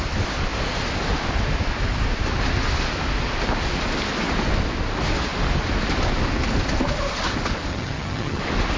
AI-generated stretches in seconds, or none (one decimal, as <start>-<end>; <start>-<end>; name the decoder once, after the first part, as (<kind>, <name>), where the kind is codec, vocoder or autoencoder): 7.7-8.4 (vocoder, HiFi-GAN)